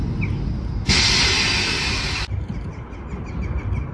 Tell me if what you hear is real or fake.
real